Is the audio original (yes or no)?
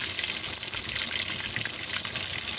yes